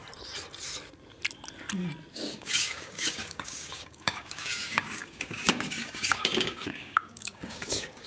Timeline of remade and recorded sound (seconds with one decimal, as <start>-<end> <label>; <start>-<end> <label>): 0.0-2.1 recorded; 2.1-8.1 remade